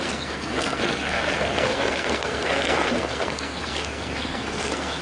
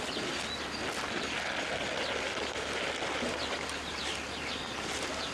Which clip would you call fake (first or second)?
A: first